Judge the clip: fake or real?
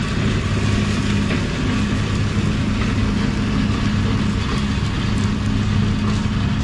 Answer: real